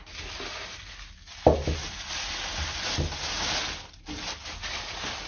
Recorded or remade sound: recorded